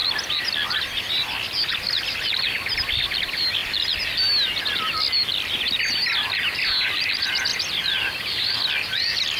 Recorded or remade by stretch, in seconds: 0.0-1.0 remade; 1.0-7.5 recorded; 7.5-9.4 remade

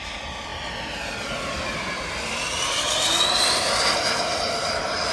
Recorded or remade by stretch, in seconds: 0.0-0.5 remade; 0.5-3.6 recorded; 3.6-5.1 remade